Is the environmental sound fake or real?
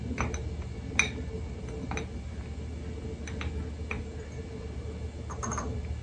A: real